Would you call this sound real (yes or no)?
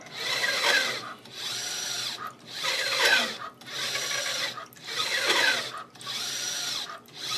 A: yes